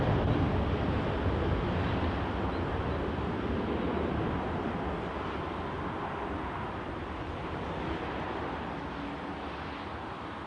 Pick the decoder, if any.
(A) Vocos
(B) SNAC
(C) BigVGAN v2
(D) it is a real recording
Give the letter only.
D